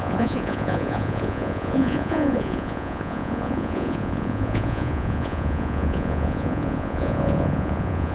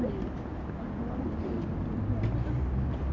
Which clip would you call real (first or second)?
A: second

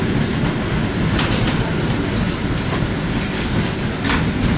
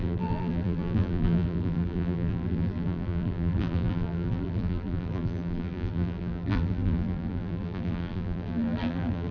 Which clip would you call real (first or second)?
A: first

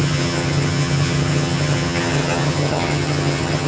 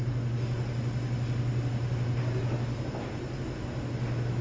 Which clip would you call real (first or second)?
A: second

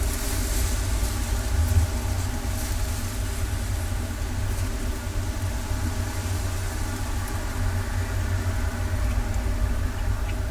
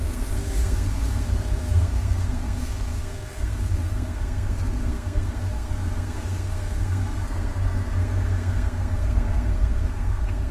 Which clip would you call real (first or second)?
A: first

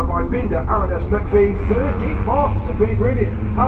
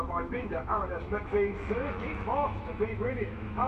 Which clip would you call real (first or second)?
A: first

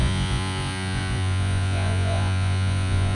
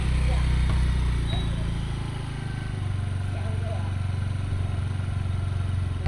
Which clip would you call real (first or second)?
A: second